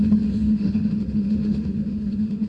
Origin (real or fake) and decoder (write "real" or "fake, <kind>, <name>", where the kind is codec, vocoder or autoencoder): fake, autoencoder, DAC-VAE